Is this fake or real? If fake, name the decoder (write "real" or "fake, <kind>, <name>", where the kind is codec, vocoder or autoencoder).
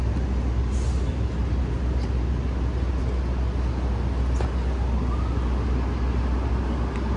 real